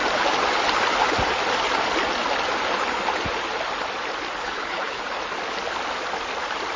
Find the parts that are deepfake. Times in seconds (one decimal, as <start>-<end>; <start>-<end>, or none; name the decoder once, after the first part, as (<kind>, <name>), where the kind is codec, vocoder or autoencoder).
4.4-5.0 (codec, HILCodec)